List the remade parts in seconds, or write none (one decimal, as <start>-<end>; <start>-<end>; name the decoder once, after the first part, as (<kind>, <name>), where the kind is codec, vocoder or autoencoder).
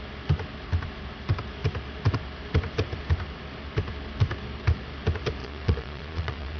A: 5.4-6.6 (vocoder, Vocos)